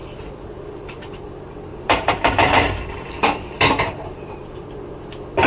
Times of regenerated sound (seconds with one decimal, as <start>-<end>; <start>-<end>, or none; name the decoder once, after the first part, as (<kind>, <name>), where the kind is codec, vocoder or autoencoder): 0.0-1.2 (vocoder, BigVGAN v2); 1.7-5.0